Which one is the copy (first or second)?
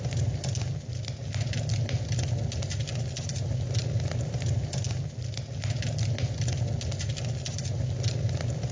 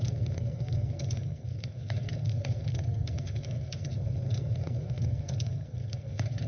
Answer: second